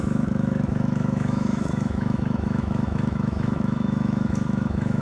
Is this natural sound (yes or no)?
no